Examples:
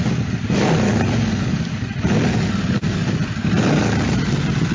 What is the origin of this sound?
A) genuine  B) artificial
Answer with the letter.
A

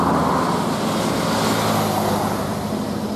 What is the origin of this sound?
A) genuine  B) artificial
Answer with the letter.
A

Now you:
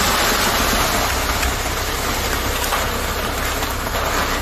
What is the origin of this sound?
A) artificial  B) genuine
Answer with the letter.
B